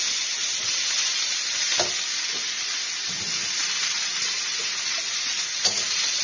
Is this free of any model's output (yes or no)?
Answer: yes